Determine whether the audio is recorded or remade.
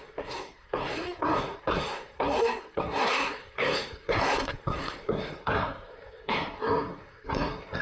remade